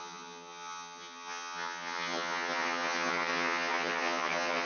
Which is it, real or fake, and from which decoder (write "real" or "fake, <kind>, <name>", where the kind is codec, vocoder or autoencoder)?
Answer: fake, vocoder, HiFi-GAN